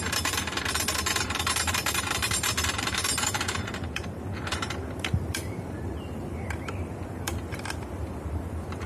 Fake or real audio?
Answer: fake